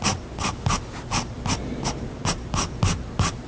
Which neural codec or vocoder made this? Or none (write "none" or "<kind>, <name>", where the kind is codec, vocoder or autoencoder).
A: none